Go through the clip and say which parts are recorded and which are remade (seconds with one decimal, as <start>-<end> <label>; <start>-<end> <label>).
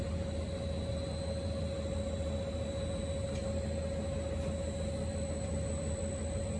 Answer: 0.0-6.6 recorded